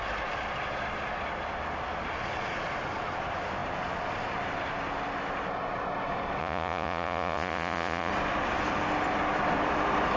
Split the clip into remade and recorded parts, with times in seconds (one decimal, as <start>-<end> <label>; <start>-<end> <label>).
0.0-6.4 recorded; 6.4-8.1 remade; 8.1-10.2 recorded